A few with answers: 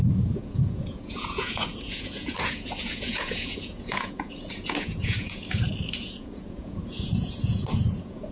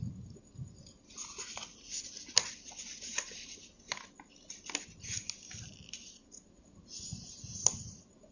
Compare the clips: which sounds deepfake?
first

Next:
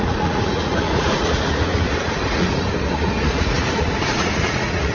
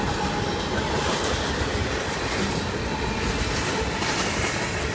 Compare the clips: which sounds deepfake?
first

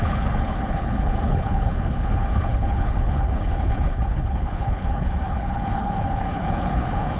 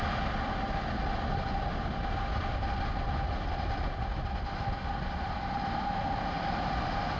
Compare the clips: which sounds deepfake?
first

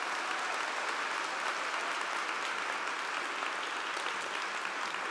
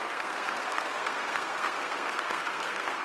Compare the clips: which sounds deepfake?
second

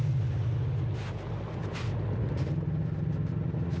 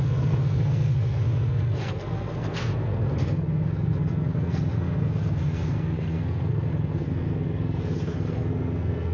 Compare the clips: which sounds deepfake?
second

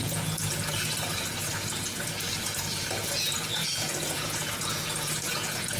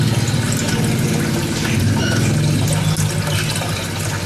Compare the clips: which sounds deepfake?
first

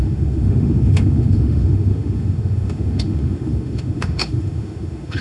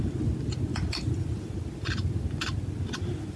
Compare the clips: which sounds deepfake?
first